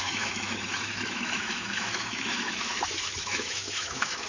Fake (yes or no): yes